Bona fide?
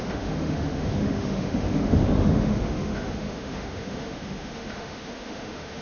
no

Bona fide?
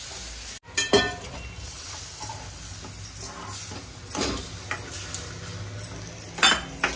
yes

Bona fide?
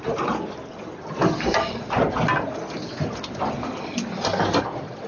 yes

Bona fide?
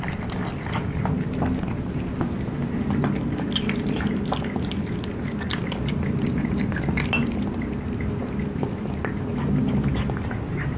yes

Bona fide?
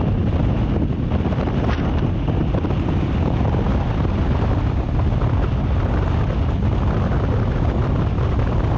yes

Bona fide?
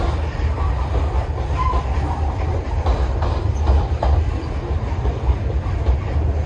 no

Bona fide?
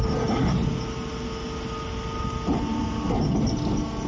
yes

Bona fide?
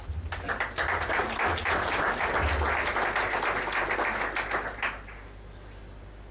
yes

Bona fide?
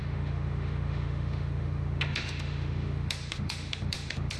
no